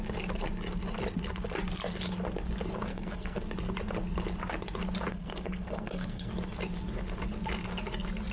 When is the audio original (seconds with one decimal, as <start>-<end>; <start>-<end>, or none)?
0.0-2.9; 3.4-5.1; 6.3-8.3